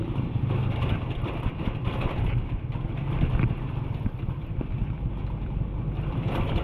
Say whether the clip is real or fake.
real